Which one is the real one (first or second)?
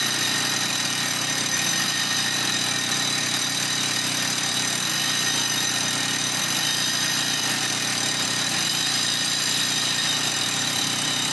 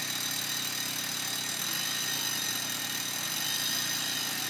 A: second